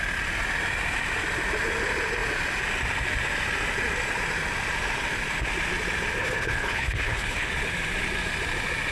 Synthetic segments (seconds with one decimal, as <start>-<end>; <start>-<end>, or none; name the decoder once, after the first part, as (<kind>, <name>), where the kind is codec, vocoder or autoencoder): 6.2-7.5 (codec, HILCodec)